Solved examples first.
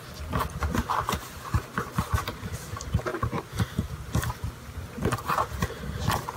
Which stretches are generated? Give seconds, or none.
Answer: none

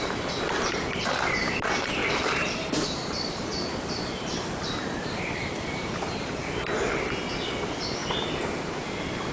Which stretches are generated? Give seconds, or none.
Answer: 2.0-3.1 (vocoder, BigVGAN v2); 3.5-5.9